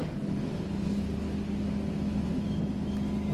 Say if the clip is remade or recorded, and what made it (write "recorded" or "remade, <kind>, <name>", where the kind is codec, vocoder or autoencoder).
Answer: recorded